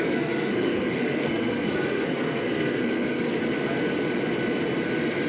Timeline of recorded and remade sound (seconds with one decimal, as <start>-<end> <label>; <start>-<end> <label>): 0.0-3.4 remade; 3.4-5.3 recorded